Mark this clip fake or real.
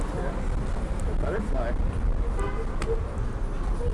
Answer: real